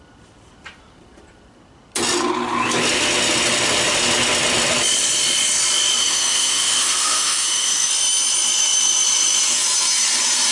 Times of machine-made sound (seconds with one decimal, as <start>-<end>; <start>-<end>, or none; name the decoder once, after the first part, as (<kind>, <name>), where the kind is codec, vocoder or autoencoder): 6.0-7.9 (autoencoder, DAC-VAE)